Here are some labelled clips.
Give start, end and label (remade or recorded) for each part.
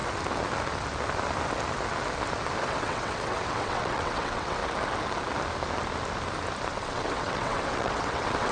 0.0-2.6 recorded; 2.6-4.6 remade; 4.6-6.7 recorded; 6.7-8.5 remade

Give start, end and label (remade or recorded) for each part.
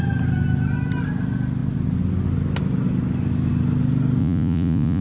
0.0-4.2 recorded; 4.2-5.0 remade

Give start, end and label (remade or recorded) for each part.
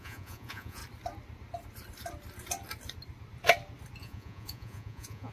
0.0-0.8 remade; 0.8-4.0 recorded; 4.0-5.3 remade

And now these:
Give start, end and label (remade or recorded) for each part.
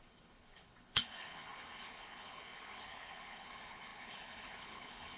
0.0-5.2 remade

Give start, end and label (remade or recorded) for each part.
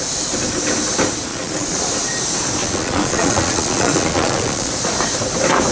0.0-1.3 recorded; 1.3-1.9 remade; 1.9-2.6 recorded; 2.6-4.7 remade; 4.7-5.7 recorded